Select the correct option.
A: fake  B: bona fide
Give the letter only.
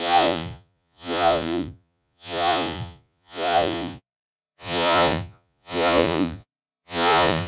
A